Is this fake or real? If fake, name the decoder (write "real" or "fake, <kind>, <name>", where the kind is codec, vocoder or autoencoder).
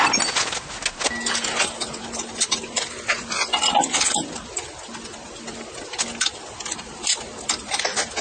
real